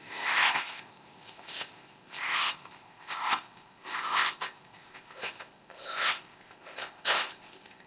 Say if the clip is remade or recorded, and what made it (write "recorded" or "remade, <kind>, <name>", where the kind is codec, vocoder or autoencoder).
remade, codec, ZipCodec